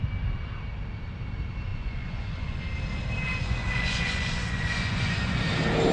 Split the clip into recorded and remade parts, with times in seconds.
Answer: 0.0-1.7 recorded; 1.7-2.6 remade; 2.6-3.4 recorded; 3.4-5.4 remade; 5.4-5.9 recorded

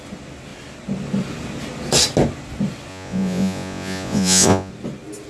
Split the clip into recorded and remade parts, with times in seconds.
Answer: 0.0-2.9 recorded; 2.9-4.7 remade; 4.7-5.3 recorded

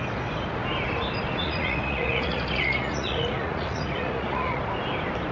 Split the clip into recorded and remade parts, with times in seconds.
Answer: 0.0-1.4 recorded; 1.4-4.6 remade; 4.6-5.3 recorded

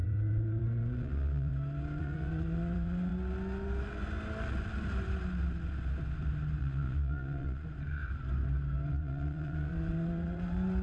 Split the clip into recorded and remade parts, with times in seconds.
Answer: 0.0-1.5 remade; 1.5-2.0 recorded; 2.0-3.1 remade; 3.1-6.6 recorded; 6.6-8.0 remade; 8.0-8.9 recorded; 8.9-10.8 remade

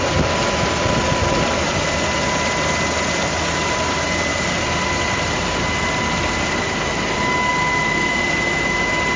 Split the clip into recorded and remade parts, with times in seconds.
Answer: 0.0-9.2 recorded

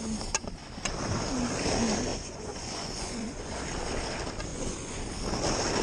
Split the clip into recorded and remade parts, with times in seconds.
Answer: 0.0-2.1 recorded; 2.1-3.6 remade; 3.6-4.5 recorded; 4.5-5.0 remade; 5.0-5.8 recorded